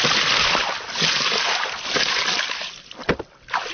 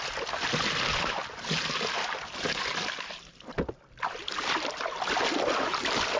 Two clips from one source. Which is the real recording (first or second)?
second